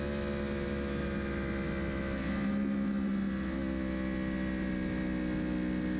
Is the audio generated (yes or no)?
no